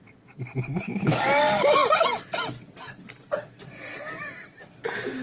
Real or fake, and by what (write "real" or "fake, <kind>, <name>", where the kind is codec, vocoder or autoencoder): real